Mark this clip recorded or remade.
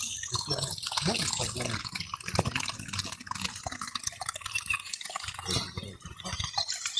recorded